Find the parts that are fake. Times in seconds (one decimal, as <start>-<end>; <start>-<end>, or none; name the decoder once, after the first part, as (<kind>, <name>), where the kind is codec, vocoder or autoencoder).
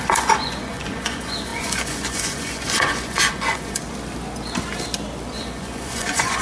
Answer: 0.0-3.8 (vocoder, Vocos); 5.3-6.4